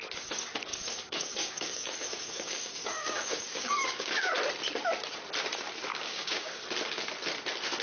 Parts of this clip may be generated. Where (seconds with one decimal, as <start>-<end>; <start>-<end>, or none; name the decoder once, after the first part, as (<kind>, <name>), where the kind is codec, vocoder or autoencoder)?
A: 0.7-4.3 (codec, DAC); 5.9-6.6